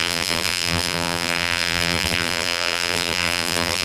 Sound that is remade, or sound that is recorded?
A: remade